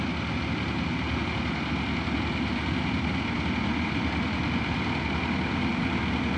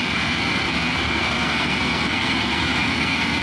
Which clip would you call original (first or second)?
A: first